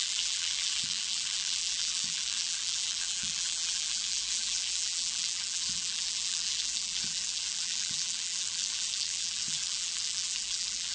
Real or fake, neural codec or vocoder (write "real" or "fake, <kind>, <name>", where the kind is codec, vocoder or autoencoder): fake, vocoder, BigVGAN v2